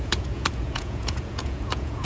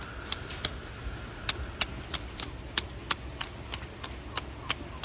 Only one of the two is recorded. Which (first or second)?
second